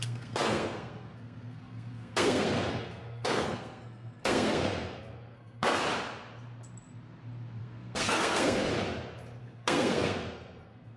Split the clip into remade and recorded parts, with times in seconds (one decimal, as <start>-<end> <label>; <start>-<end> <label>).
0.0-5.8 remade; 5.8-7.6 recorded; 7.6-8.7 remade; 8.7-9.4 recorded; 9.4-11.0 remade